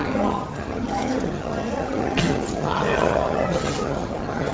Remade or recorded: remade